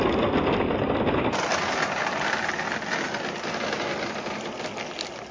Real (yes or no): yes